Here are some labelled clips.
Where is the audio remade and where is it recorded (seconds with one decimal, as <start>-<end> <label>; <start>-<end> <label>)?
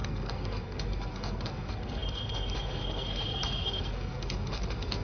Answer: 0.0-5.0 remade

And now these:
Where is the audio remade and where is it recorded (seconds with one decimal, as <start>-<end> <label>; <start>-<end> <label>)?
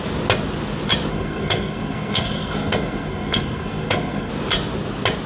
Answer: 0.0-1.1 recorded; 1.1-4.3 remade; 4.3-5.3 recorded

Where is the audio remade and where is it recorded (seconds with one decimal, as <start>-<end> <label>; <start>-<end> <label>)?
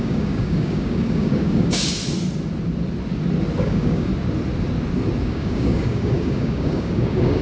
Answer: 0.0-2.0 remade; 2.0-3.6 recorded; 3.6-4.1 remade; 4.1-5.2 recorded; 5.2-7.4 remade